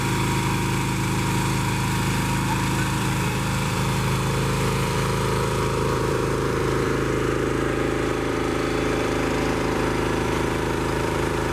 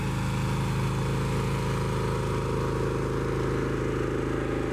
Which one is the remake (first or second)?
first